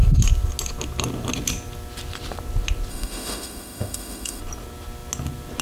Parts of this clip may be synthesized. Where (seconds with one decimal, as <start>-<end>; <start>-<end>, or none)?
2.9-4.4